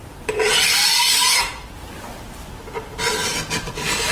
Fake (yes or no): no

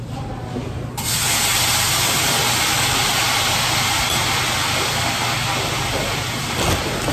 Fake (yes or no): no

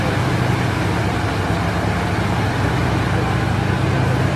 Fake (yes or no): no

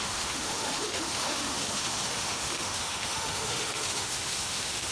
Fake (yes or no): yes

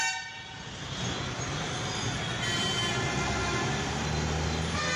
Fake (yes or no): no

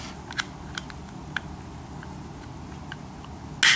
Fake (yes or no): no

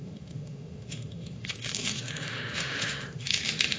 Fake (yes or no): yes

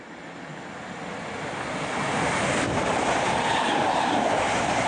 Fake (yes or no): no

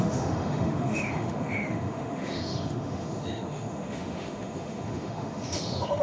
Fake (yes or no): yes